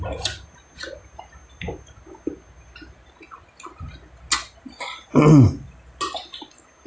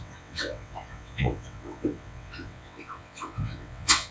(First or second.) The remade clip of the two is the second